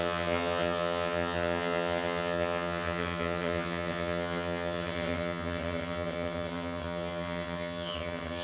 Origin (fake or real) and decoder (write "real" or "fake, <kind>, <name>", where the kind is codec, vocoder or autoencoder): fake, vocoder, HiFi-GAN